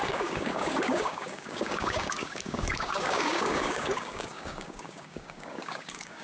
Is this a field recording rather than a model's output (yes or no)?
no